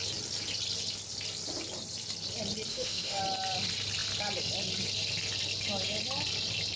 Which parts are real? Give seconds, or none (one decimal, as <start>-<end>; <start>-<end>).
0.0-2.7; 3.2-6.8